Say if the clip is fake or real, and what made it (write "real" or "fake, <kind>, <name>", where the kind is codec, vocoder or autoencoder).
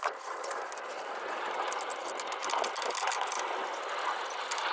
real